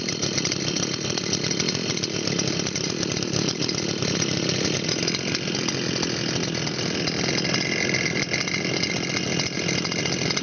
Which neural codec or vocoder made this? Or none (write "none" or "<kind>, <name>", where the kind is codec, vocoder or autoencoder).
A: none